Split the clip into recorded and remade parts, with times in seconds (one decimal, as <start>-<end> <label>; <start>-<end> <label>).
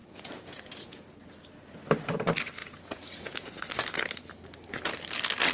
0.0-1.2 remade; 1.2-2.6 recorded; 2.6-3.5 remade; 3.5-5.5 recorded